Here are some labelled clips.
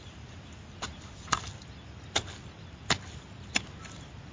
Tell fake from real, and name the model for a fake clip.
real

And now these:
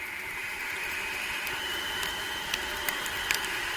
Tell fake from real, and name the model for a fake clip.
real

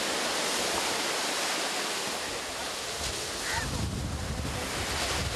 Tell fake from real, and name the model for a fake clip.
real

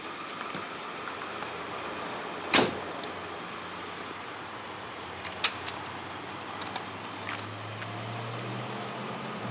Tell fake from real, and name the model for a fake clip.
real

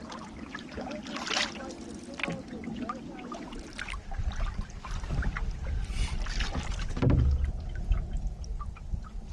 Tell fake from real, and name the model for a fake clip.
real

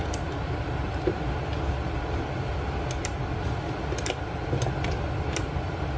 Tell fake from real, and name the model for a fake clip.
real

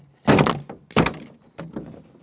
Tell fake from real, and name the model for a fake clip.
real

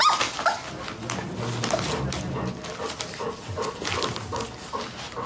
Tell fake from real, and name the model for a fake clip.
real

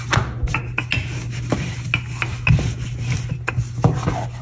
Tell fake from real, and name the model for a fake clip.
real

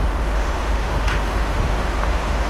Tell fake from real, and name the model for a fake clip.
fake, autoencoder, DAC-VAE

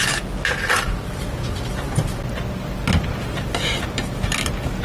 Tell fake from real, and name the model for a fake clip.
real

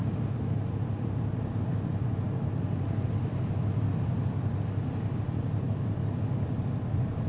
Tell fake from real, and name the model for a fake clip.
real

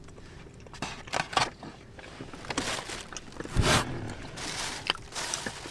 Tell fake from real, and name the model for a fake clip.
real